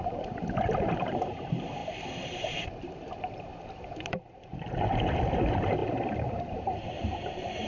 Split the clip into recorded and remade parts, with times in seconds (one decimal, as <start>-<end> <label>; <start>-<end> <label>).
0.0-7.7 remade